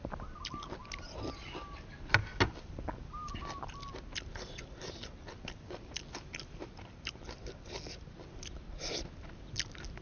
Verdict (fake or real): real